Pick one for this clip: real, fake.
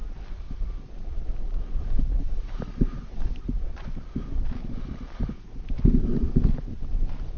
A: real